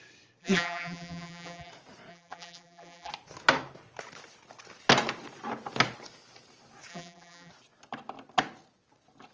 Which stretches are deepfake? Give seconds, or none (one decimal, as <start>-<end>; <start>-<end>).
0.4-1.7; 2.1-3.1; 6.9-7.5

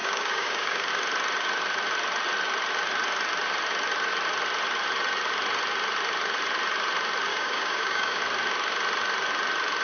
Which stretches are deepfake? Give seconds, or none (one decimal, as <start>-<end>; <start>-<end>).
0.0-0.9; 7.3-8.2

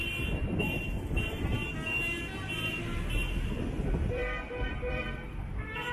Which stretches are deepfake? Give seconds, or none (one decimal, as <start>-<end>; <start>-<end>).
0.0-1.6; 3.7-5.9